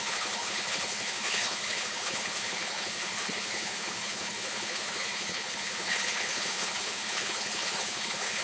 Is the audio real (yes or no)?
no